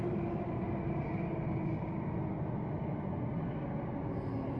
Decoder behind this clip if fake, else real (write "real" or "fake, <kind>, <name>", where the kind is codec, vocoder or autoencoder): real